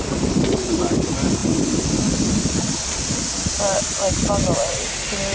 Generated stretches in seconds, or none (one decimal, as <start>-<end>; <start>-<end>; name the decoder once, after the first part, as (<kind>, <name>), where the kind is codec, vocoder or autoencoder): none